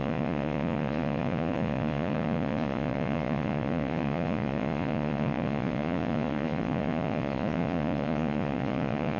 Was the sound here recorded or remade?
remade